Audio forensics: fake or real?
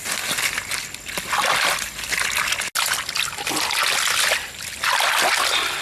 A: real